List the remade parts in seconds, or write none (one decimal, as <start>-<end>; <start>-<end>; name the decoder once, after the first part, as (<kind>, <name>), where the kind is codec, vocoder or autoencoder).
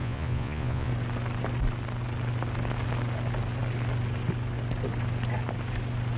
0.0-0.9 (vocoder, Vocos)